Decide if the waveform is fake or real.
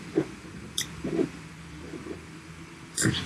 fake